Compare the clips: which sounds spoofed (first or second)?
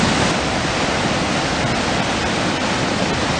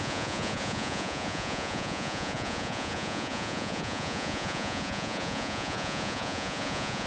second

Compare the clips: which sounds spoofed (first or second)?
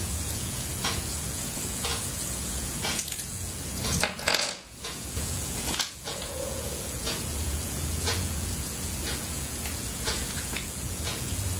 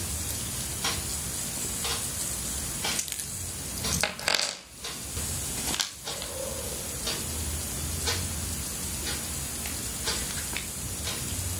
first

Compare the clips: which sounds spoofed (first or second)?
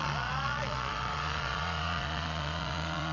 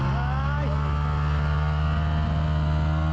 first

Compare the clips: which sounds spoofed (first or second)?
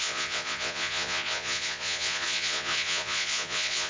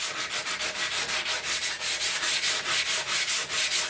first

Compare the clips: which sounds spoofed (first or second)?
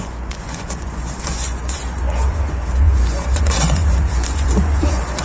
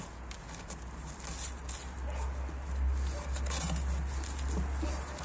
first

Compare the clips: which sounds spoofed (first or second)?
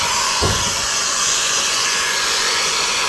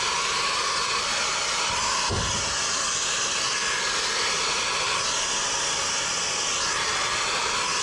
first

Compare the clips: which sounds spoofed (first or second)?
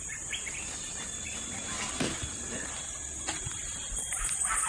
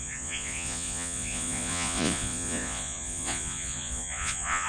second